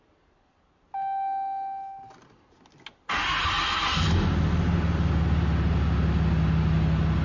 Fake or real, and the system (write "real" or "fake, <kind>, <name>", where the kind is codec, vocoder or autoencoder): real